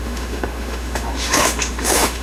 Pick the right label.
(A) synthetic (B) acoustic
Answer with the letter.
A